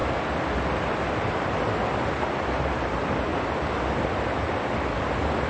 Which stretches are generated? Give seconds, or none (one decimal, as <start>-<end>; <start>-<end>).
none